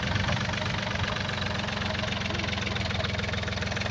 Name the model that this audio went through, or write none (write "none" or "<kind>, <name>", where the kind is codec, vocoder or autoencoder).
none